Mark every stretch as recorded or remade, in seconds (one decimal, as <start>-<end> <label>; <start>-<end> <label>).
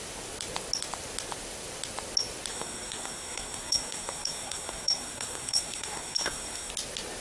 0.0-2.5 recorded; 2.5-6.7 remade; 6.7-7.2 recorded